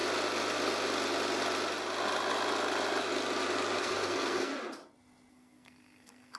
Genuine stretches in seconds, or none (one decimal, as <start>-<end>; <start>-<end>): 0.0-3.8; 4.5-5.3